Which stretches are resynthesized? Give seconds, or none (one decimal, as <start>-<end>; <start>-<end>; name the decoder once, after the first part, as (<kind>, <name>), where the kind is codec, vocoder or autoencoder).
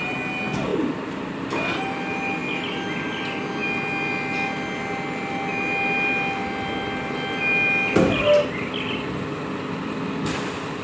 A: none